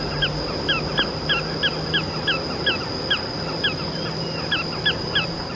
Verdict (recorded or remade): recorded